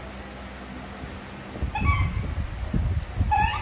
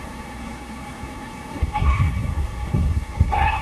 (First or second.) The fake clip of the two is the second